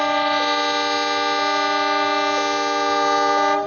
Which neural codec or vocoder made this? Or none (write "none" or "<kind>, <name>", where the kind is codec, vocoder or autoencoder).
none